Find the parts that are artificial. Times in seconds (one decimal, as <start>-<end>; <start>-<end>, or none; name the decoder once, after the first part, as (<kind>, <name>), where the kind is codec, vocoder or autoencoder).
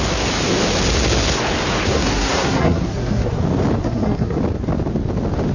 1.9-3.4 (codec, SNAC); 3.8-4.4